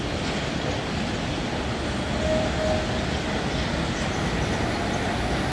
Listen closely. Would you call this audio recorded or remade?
recorded